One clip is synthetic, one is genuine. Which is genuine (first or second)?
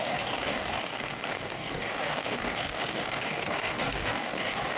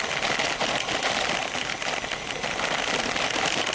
second